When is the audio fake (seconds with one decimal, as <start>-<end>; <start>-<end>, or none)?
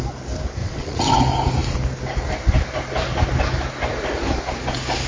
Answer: 0.6-1.1